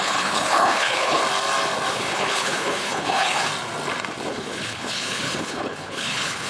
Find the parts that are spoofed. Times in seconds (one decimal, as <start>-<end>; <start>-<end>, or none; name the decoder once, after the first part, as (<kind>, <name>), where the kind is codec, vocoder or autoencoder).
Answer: 0.0-1.2 (codec, HILCodec); 1.9-3.5; 4.3-6.5